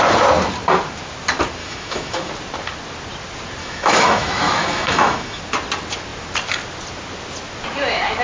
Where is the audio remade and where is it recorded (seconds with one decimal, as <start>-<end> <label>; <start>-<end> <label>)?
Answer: 0.0-1.6 recorded; 1.6-2.3 remade; 2.3-3.6 recorded; 3.6-5.4 remade; 5.4-8.2 recorded